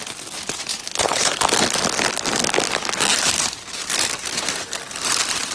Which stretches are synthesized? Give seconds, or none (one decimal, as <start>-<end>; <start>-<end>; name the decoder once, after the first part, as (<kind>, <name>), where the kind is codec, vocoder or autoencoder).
0.7-1.4 (codec, HILCodec)